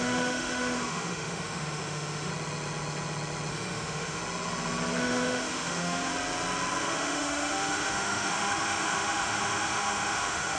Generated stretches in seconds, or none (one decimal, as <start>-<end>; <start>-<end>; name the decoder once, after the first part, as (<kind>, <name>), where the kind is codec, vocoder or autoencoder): 0.0-2.3 (autoencoder, DAC-VAE); 3.5-4.2; 5.0-6.1; 6.8-10.6